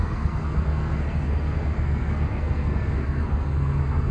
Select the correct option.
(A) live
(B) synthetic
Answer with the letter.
B